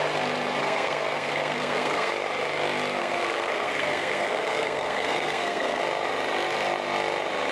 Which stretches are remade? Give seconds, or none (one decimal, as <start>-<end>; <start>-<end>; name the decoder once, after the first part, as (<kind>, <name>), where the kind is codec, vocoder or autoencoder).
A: 0.6-2.1 (codec, SNAC); 3.0-5.8